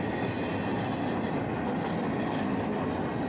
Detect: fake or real real